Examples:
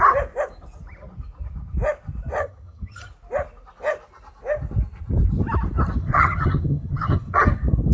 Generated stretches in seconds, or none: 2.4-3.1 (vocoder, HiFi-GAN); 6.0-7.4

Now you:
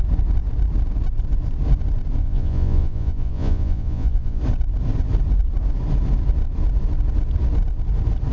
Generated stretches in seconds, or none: 2.2-4.4 (vocoder, Vocos)

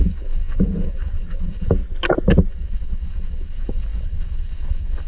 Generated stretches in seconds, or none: 0.0-1.8 (codec, DAC); 2.5-5.1

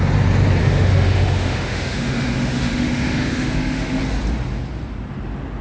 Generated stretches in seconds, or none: 0.6-4.0 (autoencoder, DAC-VAE)

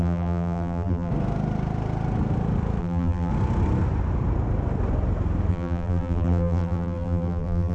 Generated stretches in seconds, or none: 0.0-1.1 (vocoder, BigVGAN v2); 2.8-3.3; 5.5-7.7